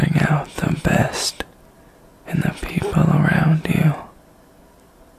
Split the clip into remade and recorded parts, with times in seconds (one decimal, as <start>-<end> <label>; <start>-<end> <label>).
0.0-5.2 recorded